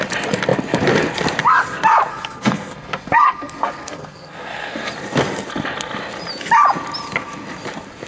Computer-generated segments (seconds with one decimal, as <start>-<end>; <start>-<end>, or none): 2.1-4.9